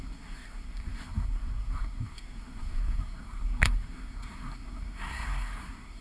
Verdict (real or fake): fake